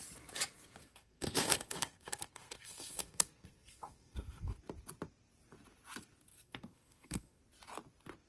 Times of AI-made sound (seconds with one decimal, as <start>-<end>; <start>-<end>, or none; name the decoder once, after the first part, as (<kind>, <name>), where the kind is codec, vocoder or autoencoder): 0.8-4.5 (codec, SNAC); 6.3-7.4